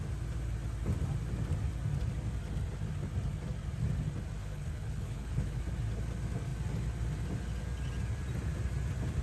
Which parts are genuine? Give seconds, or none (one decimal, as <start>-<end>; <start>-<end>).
0.0-4.4; 5.6-9.2